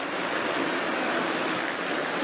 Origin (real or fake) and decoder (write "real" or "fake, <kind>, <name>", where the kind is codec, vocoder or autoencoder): real